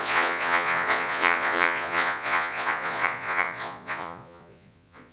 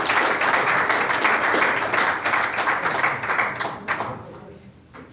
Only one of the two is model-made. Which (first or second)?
first